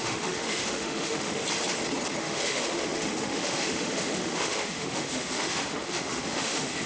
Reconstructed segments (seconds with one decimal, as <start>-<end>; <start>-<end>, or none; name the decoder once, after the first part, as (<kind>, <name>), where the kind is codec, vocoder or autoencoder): 0.0-1.4 (autoencoder, DAC-VAE); 2.2-6.9

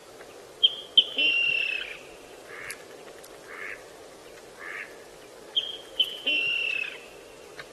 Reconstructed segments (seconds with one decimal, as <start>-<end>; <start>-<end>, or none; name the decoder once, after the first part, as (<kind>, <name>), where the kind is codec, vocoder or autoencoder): none

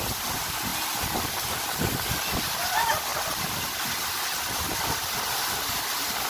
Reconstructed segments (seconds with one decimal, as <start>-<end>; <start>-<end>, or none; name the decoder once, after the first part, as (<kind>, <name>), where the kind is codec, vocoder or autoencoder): 0.0-0.7 (vocoder, BigVGAN v2); 2.1-6.3

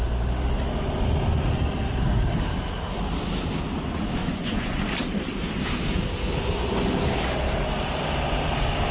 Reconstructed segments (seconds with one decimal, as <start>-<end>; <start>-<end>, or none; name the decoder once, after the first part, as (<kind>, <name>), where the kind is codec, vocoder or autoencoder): 4.2-4.9 (vocoder, Vocos)

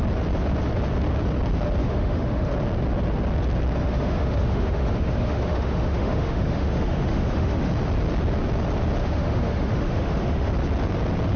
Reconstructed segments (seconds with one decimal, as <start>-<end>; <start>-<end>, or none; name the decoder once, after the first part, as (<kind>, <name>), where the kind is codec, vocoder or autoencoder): 1.8-2.5 (autoencoder, DAC-VAE); 3.8-7.7; 9.0-10.5

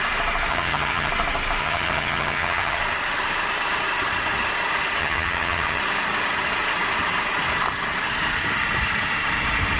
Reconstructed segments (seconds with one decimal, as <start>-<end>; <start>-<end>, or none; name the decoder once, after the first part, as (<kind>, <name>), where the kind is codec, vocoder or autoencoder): 0.5-1.1 (vocoder, HiFi-GAN); 1.6-2.8; 5.0-5.8